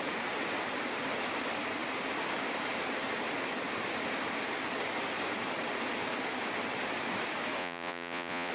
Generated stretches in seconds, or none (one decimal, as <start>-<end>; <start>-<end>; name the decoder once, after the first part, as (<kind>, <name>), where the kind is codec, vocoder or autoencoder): 7.6-8.5 (vocoder, Vocos)